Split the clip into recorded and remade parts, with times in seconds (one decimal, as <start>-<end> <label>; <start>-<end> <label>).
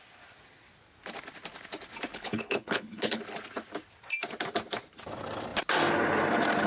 0.0-2.1 recorded; 2.1-3.2 remade; 3.2-6.7 recorded